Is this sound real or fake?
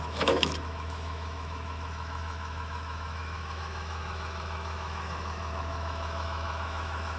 fake